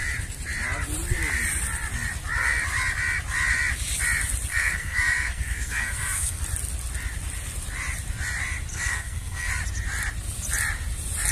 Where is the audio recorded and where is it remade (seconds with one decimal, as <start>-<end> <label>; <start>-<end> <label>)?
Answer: 0.0-4.5 recorded; 4.5-6.4 remade; 6.4-8.7 recorded; 8.7-9.5 remade; 9.5-11.3 recorded